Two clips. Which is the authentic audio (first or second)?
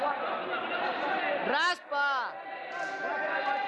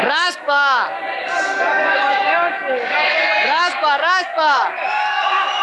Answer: first